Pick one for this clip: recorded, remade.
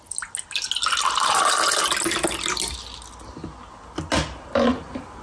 recorded